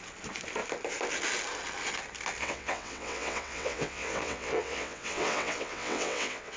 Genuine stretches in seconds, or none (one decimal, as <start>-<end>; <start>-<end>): 0.0-2.4